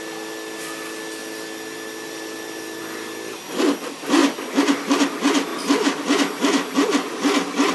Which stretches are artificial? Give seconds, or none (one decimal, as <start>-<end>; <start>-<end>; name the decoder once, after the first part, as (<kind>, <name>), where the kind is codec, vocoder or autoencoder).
none